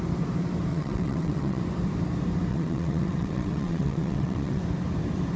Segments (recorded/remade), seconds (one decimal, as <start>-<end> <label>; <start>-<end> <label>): 0.0-0.7 recorded; 0.7-1.6 remade; 1.6-2.5 recorded; 2.5-4.6 remade; 4.6-5.4 recorded